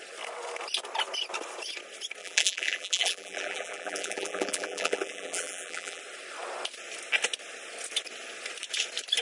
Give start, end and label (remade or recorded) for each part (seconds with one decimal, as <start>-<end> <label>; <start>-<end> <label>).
0.0-2.2 recorded; 2.2-6.0 remade; 6.0-9.2 recorded